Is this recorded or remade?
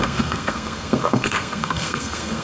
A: remade